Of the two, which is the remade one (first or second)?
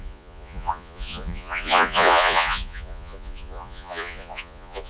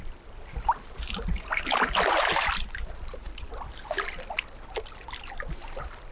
first